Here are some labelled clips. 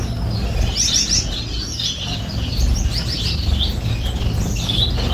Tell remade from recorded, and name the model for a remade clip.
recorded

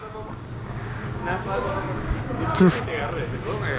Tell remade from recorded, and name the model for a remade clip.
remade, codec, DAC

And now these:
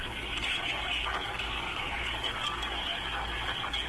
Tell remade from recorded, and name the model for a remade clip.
remade, codec, DAC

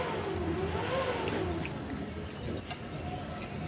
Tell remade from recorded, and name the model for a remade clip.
recorded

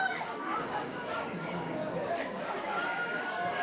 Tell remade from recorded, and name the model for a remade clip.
remade, codec, DAC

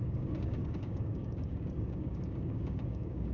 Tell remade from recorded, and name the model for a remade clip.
remade, codec, DAC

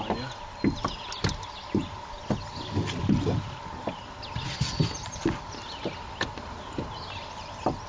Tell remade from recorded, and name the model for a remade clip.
recorded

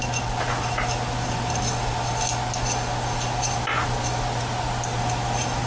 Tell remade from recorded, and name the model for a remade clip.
recorded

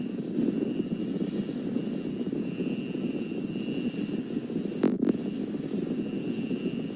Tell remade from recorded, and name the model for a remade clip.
recorded